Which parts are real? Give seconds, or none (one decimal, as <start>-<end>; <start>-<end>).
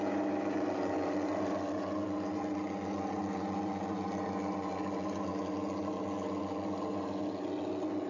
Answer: 0.0-8.1